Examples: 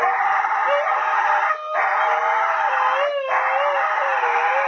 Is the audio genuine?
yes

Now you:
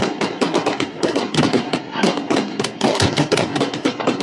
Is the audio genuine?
no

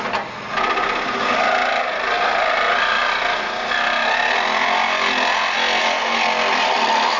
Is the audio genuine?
yes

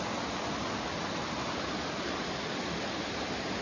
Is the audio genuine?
yes